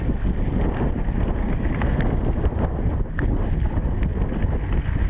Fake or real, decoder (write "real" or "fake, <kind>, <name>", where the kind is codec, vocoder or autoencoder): real